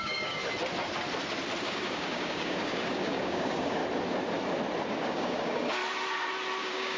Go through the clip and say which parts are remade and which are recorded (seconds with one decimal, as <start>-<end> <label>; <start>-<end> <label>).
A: 0.0-0.4 remade; 0.4-1.6 recorded; 1.6-3.8 remade; 3.8-4.9 recorded; 4.9-5.8 remade; 5.8-6.6 recorded; 6.6-7.0 remade